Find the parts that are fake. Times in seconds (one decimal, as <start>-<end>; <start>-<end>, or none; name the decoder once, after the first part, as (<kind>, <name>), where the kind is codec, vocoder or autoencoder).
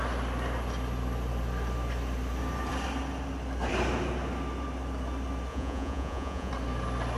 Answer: 5.5-6.5 (vocoder, Vocos)